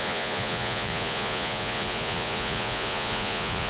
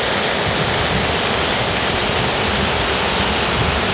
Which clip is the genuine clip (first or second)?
second